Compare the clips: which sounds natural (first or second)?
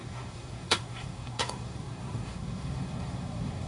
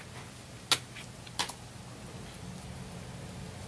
second